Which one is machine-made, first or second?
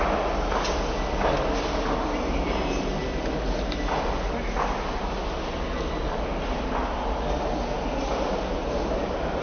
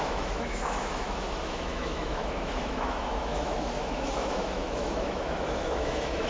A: second